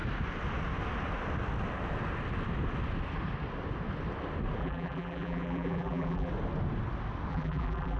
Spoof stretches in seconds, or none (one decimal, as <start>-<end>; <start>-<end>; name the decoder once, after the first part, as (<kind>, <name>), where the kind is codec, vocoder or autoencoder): 4.6-6.3 (vocoder, BigVGAN v2); 7.3-8.0